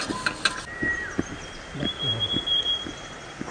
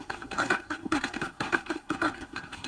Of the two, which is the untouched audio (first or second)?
first